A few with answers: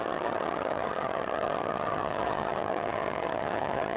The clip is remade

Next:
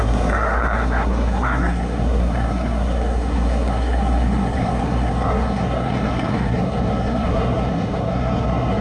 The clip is remade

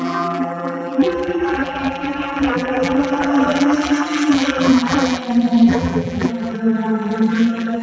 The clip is remade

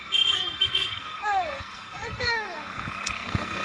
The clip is remade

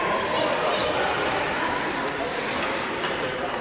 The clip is remade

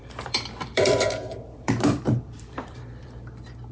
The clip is remade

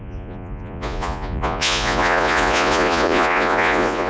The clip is remade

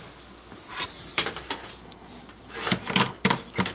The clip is recorded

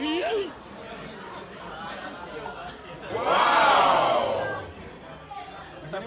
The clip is recorded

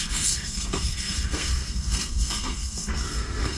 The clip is remade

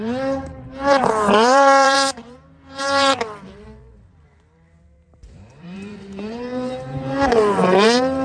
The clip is remade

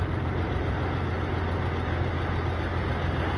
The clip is recorded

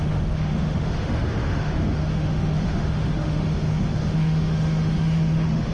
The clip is remade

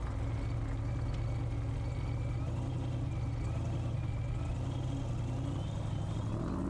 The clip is recorded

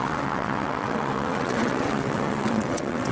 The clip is remade